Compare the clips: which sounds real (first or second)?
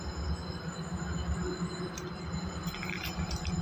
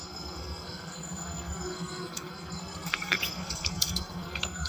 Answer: first